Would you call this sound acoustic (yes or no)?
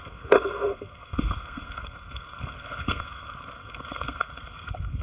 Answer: no